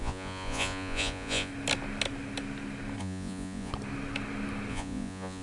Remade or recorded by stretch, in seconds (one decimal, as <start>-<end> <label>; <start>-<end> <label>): 0.0-1.5 remade; 1.5-3.0 recorded; 3.0-3.7 remade; 3.7-4.7 recorded; 4.7-5.4 remade